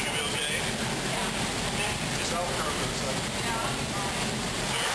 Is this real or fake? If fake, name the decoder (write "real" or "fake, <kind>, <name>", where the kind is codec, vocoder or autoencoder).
real